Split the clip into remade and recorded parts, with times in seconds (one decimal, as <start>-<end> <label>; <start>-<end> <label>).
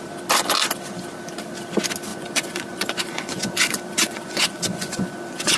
0.0-2.1 recorded; 2.1-5.6 remade